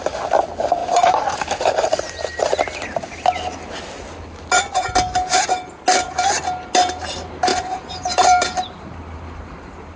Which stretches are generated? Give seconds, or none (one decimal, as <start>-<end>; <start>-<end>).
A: 0.8-2.4; 7.5-9.2